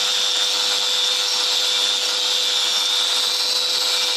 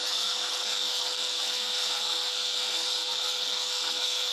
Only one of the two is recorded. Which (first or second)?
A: first